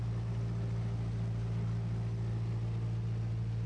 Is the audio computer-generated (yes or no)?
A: no